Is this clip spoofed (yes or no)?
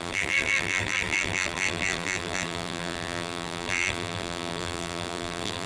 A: yes